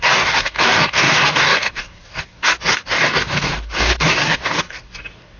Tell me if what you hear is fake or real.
fake